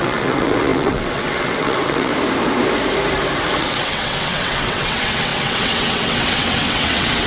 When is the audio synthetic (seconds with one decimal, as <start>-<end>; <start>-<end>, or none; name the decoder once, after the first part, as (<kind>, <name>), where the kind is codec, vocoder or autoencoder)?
0.0-2.1 (vocoder, WaveNeXt); 3.5-7.3

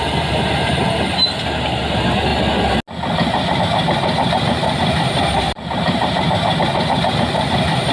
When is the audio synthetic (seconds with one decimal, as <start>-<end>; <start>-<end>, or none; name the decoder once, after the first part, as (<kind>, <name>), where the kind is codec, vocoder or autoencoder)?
0.0-2.3 (vocoder, BigVGAN v2); 3.6-7.9

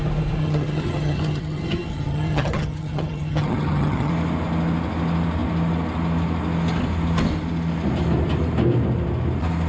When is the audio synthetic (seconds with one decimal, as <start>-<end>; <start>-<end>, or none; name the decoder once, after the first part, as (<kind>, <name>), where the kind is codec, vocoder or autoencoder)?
0.4-4.1 (vocoder, HiFi-GAN)

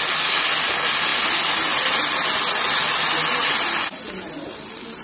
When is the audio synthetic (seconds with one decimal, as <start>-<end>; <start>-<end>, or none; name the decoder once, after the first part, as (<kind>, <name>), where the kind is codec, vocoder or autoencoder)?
none